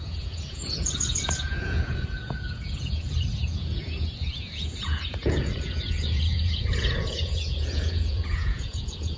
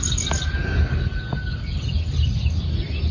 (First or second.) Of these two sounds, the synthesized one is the first